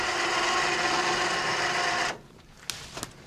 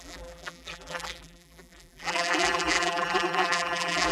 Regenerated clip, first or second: second